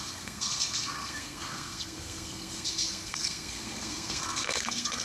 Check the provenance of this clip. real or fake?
fake